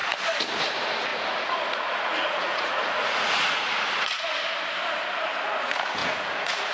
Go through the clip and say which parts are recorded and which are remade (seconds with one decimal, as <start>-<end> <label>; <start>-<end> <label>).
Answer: 0.0-1.1 recorded; 1.1-4.4 remade; 4.4-6.0 recorded; 6.0-6.7 remade